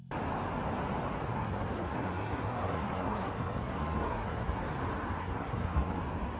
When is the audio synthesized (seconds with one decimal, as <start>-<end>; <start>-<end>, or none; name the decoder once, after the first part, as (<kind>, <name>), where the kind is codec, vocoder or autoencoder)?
1.3-4.6 (codec, SNAC); 5.2-6.0